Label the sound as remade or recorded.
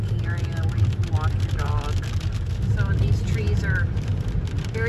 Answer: recorded